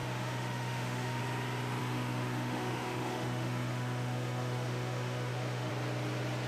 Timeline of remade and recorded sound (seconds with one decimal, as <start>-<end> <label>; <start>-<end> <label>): 0.0-1.2 remade; 1.2-1.8 recorded; 1.8-5.7 remade; 5.7-6.5 recorded